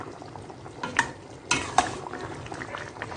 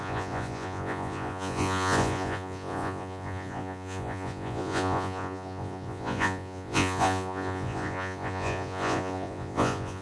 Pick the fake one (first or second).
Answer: second